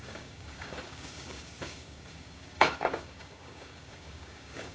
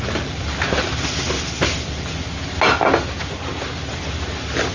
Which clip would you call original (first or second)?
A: second